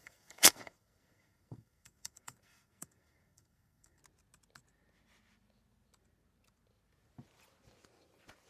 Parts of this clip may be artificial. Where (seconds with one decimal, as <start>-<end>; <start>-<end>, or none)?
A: 0.0-4.0